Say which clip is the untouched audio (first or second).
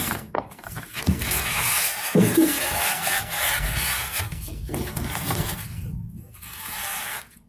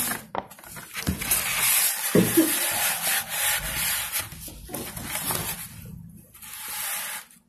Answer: second